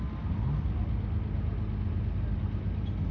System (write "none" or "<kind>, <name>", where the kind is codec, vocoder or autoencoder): none